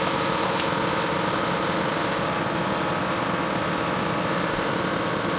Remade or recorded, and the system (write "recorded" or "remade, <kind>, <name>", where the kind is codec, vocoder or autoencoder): recorded